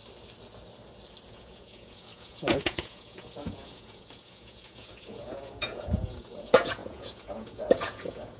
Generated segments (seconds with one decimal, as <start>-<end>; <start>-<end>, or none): 1.3-8.4